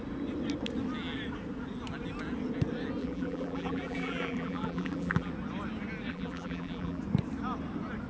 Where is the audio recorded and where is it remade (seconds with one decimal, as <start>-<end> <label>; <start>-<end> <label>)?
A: 0.0-3.0 recorded; 3.0-5.3 remade; 5.3-6.1 recorded; 6.1-7.0 remade; 7.0-8.1 recorded